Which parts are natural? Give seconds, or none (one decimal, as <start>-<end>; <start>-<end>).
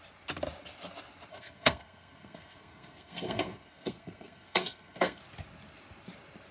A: 0.0-1.3; 5.2-6.5